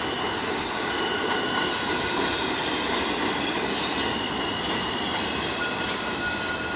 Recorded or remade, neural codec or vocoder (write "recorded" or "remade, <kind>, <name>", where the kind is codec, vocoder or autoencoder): recorded